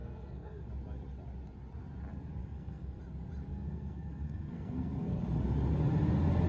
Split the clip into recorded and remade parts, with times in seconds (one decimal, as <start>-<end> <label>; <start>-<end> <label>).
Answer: 0.0-0.7 remade; 0.7-2.4 recorded; 2.4-3.0 remade; 3.0-3.5 recorded; 3.5-5.2 remade; 5.2-6.5 recorded